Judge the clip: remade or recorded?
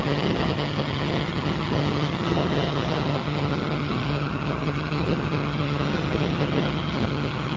remade